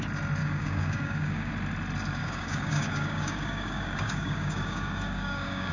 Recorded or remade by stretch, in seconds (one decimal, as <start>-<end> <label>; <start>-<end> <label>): 0.0-0.4 recorded; 0.4-1.5 remade; 1.5-2.2 recorded; 2.2-5.7 remade